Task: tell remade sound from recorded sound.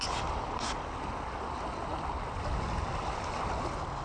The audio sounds recorded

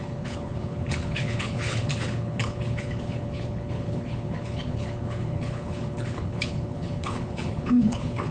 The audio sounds remade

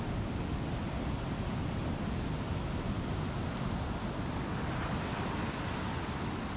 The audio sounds recorded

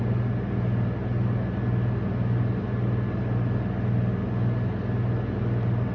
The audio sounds recorded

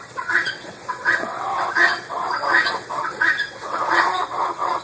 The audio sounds remade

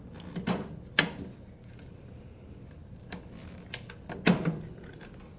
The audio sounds recorded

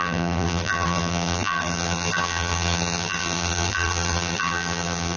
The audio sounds remade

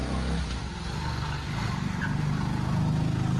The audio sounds recorded